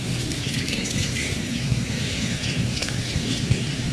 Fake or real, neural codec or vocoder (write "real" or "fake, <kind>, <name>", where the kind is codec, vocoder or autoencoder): fake, codec, SNAC